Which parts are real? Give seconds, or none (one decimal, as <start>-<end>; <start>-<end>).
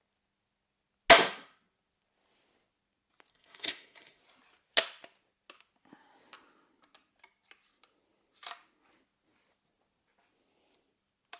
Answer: 0.0-3.3; 4.2-11.4